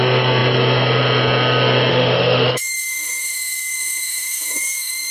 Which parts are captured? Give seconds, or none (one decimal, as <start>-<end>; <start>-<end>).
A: 0.0-1.9